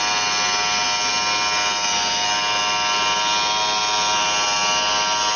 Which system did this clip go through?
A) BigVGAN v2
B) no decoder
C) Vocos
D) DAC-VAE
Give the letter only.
B